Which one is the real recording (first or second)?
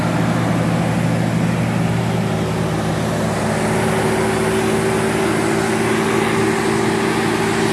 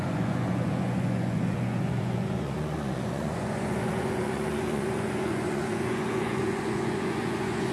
first